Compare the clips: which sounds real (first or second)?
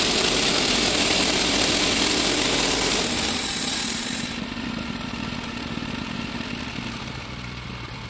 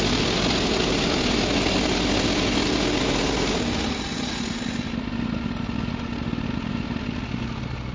second